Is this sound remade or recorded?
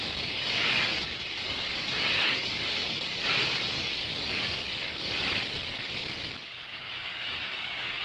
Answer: remade